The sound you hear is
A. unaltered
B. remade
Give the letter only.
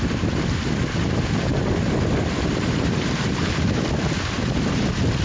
A